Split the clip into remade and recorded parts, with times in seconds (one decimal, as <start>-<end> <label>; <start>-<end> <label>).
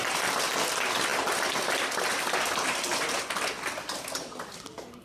0.0-5.0 recorded